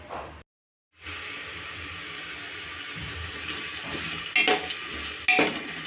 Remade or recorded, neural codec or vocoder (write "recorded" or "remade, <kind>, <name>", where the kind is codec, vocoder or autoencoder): recorded